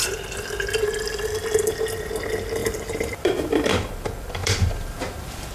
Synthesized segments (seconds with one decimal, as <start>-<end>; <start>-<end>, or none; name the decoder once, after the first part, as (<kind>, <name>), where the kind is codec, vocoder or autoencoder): 2.6-3.9 (vocoder, BigVGAN v2); 4.4-5.5